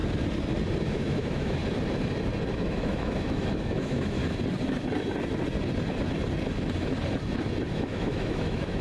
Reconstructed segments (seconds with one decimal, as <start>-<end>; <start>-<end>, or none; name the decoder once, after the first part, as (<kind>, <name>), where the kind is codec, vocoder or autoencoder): 0.8-1.6 (autoencoder, DAC-VAE); 2.5-4.2; 7.7-8.8